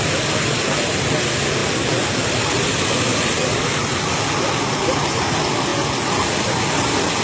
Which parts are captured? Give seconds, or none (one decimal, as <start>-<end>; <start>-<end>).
0.0-3.1; 4.0-7.2